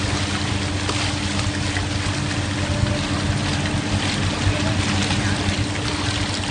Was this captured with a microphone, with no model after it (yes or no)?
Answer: yes